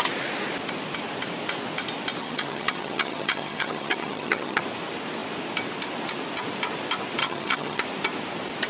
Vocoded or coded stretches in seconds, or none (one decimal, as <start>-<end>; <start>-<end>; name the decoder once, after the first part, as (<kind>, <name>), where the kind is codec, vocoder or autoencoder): 2.2-4.6 (vocoder, HiFi-GAN); 7.2-7.8